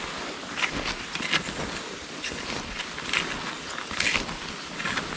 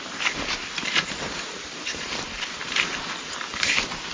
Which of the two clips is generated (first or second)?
second